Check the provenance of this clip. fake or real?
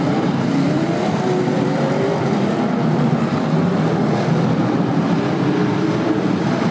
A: fake